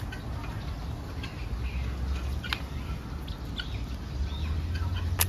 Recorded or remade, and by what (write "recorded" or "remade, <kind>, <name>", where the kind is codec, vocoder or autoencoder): recorded